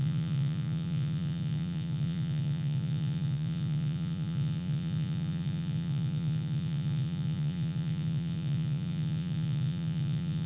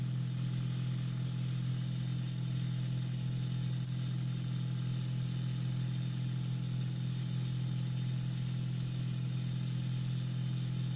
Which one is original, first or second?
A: second